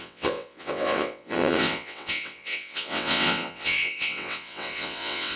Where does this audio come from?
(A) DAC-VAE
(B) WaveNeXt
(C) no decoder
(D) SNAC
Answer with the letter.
B